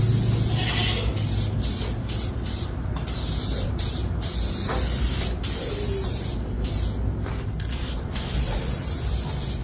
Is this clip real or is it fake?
real